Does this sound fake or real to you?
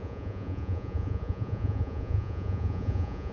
fake